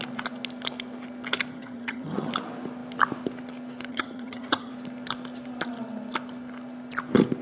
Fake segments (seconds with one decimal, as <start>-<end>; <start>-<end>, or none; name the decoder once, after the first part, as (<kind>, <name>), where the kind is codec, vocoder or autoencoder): 1.5-2.3 (vocoder, HiFi-GAN); 3.9-4.7